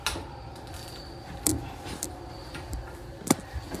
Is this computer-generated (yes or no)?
no